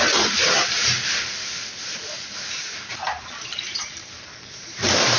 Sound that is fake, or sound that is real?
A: fake